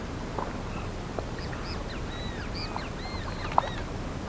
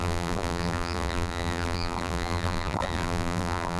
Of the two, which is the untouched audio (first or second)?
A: first